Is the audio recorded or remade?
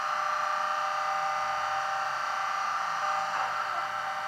recorded